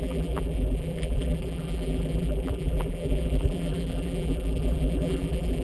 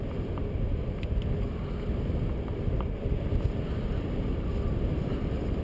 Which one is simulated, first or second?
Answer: first